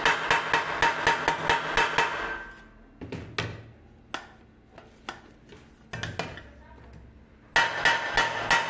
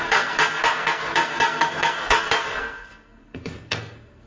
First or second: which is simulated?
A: second